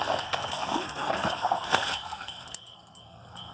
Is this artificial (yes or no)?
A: yes